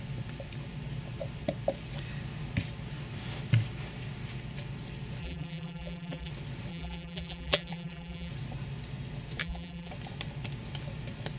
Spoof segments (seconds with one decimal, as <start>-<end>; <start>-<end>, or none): 5.2-6.3; 6.7-8.3; 9.4-9.9